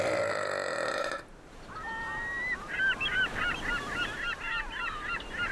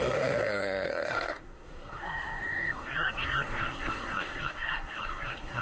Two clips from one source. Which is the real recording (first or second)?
first